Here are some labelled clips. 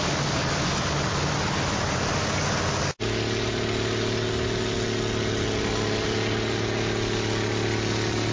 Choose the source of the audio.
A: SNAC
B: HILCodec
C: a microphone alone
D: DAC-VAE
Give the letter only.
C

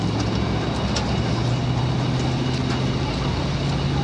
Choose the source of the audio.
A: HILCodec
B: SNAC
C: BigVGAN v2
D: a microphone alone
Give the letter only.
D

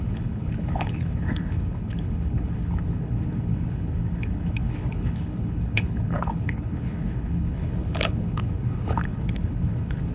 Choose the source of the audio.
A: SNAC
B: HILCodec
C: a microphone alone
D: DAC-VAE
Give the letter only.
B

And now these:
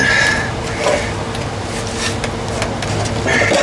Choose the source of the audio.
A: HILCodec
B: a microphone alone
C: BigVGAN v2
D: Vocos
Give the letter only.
B